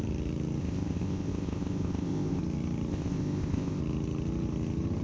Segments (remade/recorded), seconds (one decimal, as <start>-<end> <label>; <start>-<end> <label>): 0.0-0.6 recorded; 0.6-2.4 remade; 2.4-2.9 recorded; 2.9-3.8 remade; 3.8-5.0 recorded